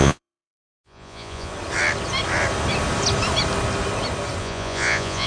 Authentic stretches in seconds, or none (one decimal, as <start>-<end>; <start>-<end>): 1.5-4.4